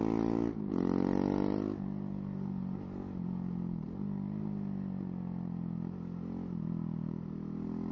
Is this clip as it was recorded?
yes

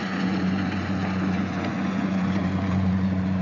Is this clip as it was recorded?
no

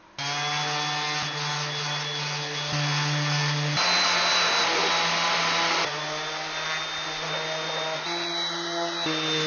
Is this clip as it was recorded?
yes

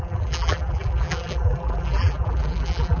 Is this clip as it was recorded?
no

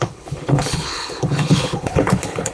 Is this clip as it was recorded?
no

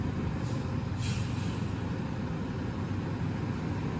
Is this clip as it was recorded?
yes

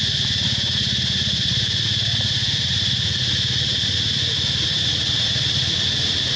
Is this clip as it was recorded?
yes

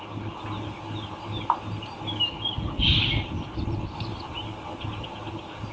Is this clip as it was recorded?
yes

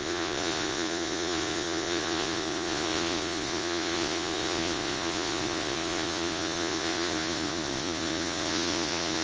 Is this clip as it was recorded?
no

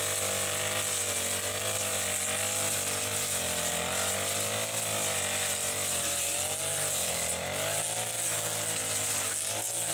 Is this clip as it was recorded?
yes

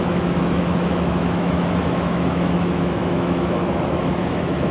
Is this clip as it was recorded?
no